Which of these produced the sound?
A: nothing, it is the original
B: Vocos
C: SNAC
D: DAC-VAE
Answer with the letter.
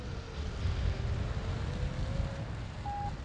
A